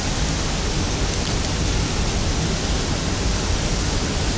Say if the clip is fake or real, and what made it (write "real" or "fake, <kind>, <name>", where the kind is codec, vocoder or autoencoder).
real